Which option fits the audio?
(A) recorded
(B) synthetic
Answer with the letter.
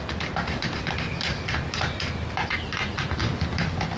A